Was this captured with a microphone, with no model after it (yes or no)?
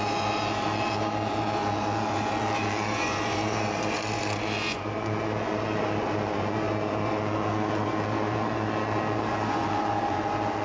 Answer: no